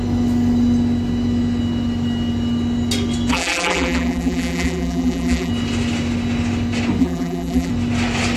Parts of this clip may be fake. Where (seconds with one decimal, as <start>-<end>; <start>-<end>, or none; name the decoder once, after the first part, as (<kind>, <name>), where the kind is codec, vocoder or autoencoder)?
3.3-5.5 (vocoder, BigVGAN v2); 7.0-7.7